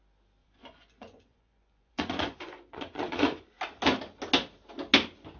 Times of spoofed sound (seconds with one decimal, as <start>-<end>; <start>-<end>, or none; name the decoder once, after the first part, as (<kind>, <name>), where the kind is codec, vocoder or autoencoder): 0.4-3.6 (vocoder, Vocos)